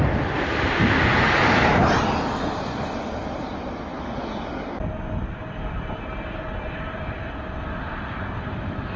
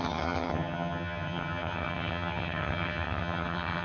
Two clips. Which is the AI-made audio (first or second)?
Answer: second